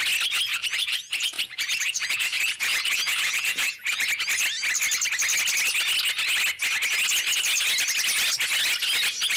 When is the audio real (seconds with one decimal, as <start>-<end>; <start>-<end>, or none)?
0.0-0.5; 4.1-9.4